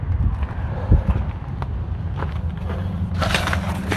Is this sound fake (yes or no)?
no